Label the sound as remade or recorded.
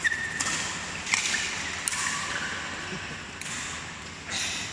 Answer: recorded